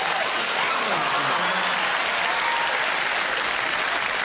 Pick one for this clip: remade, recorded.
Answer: recorded